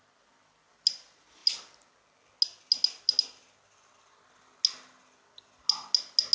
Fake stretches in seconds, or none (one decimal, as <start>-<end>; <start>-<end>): none